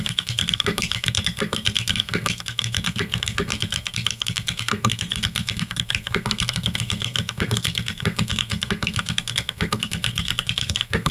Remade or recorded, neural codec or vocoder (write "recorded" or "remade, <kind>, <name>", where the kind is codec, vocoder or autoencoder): remade, codec, SNAC